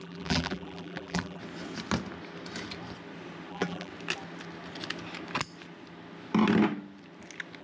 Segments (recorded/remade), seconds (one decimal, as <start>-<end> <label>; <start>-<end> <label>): 0.0-1.4 remade; 1.4-3.5 recorded; 3.5-3.9 remade; 3.9-7.6 recorded